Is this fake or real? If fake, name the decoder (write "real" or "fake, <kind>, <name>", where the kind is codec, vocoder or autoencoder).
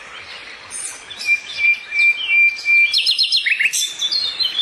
real